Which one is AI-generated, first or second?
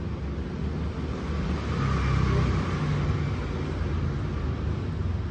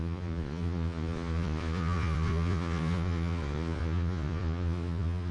second